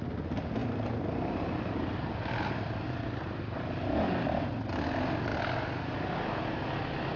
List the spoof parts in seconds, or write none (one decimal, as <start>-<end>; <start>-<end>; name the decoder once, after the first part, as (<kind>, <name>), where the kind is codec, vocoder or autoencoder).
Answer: 0.6-4.0 (vocoder, BigVGAN v2)